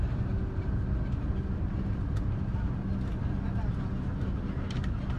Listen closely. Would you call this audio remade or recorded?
recorded